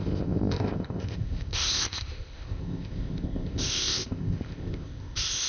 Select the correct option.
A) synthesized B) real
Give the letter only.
A